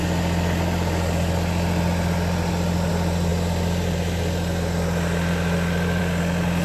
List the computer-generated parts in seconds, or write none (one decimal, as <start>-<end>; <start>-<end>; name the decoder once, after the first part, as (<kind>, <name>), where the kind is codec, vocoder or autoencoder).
none